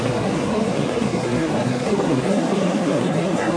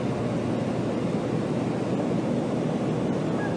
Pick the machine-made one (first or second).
first